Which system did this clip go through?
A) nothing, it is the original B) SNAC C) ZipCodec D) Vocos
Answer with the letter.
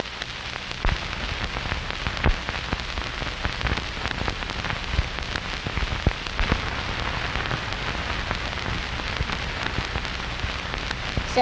A